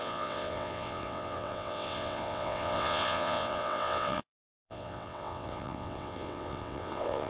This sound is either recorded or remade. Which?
remade